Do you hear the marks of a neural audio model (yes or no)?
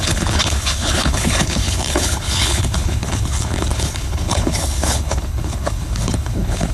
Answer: yes